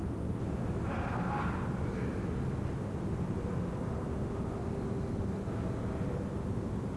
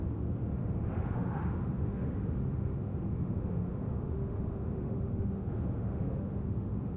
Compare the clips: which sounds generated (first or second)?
second